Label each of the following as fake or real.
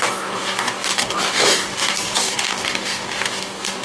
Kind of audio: fake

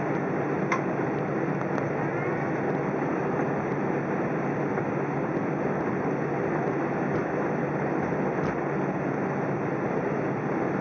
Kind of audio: real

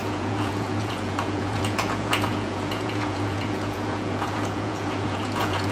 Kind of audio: fake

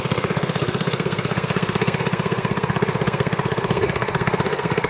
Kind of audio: fake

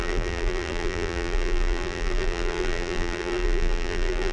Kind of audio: fake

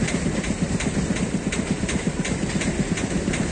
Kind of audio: real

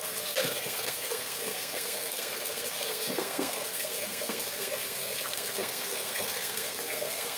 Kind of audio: fake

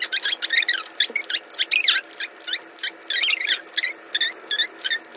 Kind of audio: real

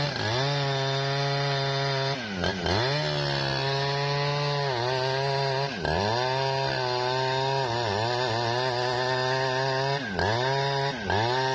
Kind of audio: real